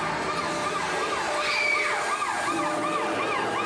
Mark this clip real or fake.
real